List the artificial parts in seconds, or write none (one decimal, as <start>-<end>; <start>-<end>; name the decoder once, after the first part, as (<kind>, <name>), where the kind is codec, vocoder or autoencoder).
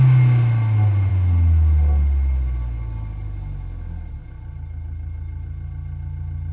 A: none